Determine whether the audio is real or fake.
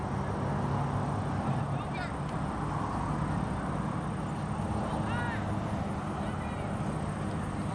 real